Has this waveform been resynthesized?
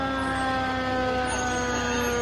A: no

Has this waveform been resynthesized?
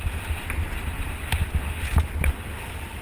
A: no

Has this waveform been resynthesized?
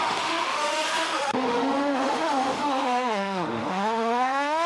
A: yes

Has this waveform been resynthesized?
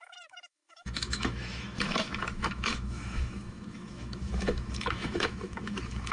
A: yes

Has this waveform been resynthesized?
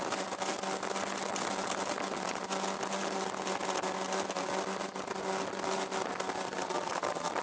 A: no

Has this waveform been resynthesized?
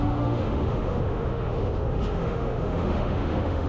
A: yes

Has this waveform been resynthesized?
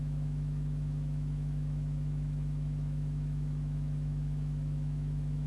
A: yes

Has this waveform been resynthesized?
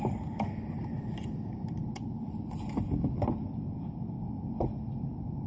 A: no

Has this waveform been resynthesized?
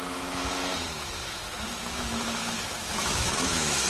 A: yes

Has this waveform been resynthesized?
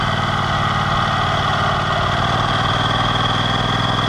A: no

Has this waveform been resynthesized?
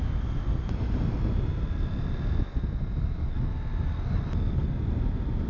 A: no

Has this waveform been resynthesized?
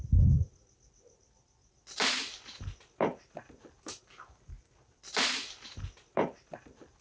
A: no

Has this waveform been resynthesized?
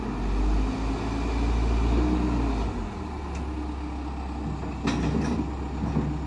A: no